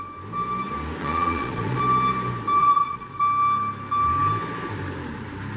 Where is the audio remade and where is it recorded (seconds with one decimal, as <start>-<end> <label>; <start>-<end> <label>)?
0.0-1.0 recorded; 1.0-1.8 remade; 1.8-2.6 recorded; 2.6-3.2 remade; 3.2-5.6 recorded